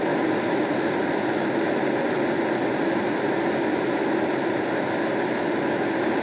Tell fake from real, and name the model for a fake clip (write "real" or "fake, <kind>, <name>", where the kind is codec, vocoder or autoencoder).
real